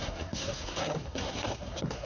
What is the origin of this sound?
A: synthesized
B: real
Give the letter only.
A